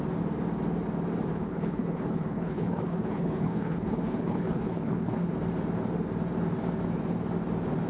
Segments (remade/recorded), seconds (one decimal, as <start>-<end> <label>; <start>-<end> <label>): 0.0-1.3 recorded; 1.3-5.3 remade; 5.3-7.9 recorded